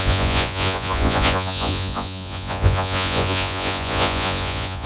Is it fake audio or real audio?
fake